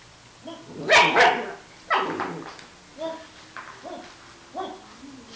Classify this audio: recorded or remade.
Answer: recorded